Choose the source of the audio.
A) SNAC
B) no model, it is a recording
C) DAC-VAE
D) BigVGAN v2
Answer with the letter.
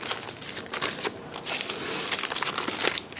B